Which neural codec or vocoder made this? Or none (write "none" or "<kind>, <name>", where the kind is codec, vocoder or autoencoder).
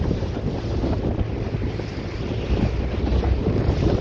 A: none